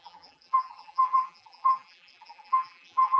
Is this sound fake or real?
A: fake